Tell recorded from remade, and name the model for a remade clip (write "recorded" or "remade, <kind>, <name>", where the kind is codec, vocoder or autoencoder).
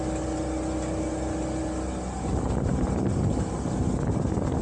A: recorded